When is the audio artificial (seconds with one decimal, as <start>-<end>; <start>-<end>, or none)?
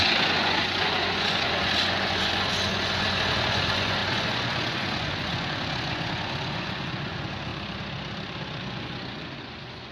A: 0.0-7.5; 8.6-9.9